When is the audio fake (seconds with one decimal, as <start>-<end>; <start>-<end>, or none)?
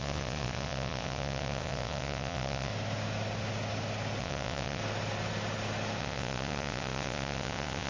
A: 0.0-2.7; 4.2-4.8; 6.0-7.9